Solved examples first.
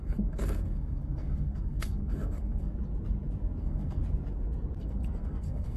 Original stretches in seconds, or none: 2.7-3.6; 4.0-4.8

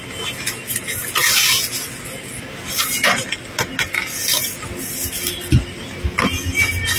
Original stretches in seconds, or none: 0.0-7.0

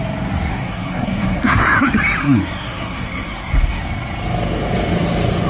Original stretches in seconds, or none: 0.0-0.5; 1.6-2.2; 3.8-5.5